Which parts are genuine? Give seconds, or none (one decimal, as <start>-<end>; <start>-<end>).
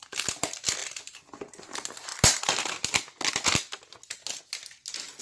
0.0-0.8; 1.5-5.2